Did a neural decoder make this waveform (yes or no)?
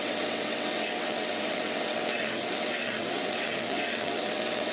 yes